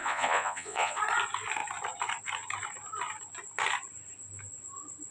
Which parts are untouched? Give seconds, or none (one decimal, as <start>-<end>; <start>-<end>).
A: 1.0-5.1